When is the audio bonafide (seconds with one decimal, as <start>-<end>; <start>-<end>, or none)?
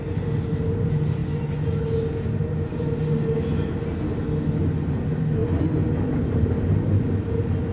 0.0-7.7